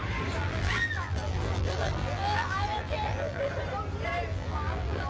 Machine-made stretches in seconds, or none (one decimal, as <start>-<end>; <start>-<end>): 0.4-3.5; 4.3-5.1